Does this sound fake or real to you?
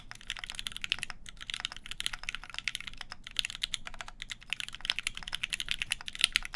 real